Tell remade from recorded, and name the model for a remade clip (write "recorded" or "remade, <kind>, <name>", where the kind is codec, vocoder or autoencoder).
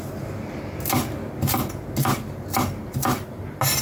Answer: recorded